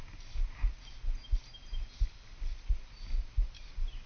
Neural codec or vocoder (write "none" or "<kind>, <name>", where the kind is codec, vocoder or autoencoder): none